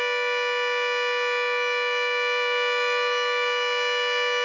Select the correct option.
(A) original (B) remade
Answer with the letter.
A